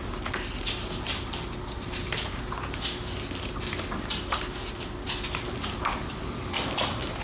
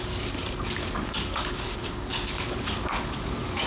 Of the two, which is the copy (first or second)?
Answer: second